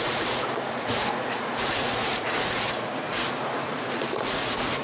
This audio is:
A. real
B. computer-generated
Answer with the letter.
B